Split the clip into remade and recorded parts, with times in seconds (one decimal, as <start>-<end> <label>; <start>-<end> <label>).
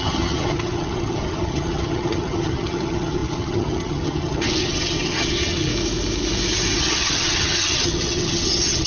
0.0-5.7 remade; 5.7-6.8 recorded; 6.8-8.9 remade